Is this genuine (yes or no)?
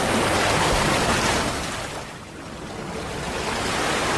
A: yes